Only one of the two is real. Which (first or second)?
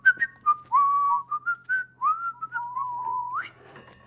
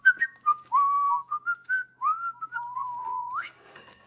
first